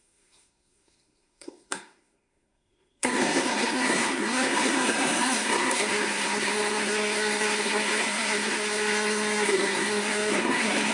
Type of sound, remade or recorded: remade